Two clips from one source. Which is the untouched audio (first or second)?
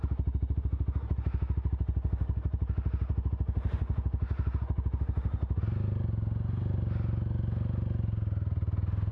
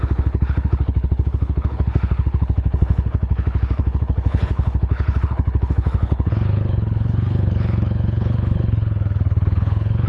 first